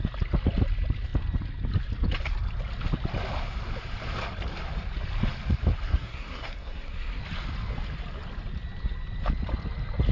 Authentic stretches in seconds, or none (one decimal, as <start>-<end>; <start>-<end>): 0.0-5.9; 7.2-10.1